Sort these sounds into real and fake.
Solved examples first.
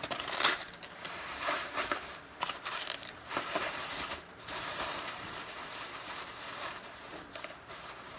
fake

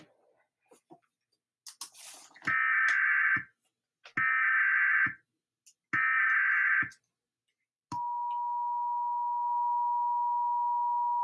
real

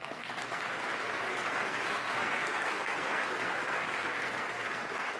fake